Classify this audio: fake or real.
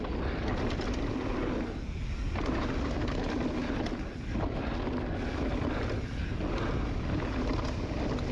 real